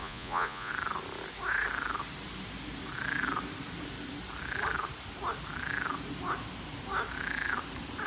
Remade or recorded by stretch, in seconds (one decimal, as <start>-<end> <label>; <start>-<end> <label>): 0.0-0.7 remade; 0.7-8.1 recorded